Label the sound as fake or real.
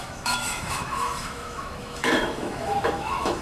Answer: fake